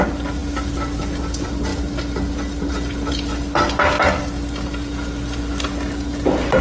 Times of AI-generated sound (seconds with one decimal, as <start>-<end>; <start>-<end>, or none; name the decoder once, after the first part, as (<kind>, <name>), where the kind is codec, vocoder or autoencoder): none